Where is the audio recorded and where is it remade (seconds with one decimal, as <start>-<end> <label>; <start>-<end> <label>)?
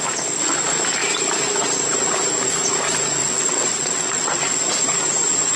0.0-3.2 recorded; 3.2-4.6 remade; 4.6-5.6 recorded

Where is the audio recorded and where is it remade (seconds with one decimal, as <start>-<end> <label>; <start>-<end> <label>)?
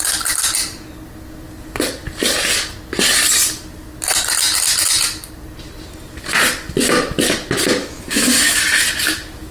0.0-7.8 recorded; 7.8-8.6 remade; 8.6-9.5 recorded